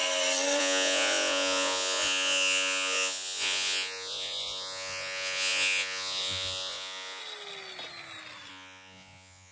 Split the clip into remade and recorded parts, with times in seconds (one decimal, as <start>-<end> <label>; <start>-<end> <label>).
0.0-0.6 recorded; 0.6-7.2 remade; 7.2-8.5 recorded; 8.5-9.5 remade